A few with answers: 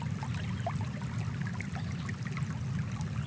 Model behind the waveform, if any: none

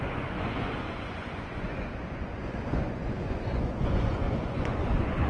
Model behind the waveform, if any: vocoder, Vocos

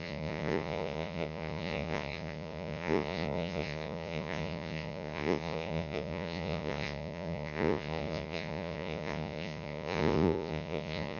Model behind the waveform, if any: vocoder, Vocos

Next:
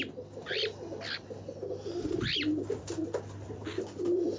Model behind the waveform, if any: none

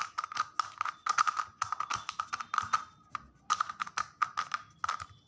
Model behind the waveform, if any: none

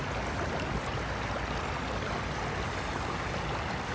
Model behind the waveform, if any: none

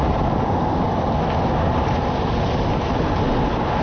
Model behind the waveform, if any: none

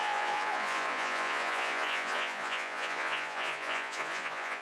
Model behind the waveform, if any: vocoder, Vocos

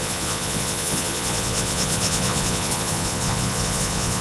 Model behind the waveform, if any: vocoder, Vocos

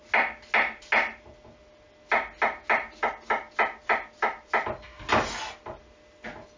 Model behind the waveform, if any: none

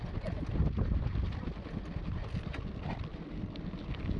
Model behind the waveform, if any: none